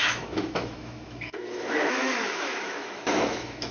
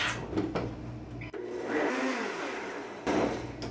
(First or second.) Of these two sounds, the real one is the second